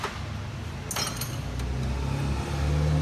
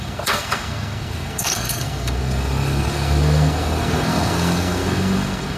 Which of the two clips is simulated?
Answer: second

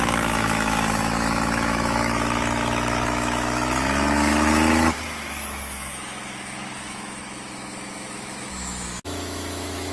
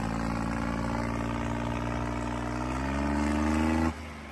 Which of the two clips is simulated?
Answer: first